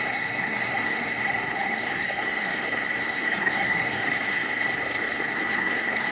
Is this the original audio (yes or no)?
no